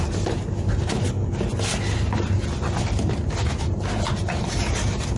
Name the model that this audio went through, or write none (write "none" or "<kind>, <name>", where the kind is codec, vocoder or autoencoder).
none